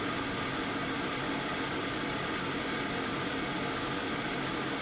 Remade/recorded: recorded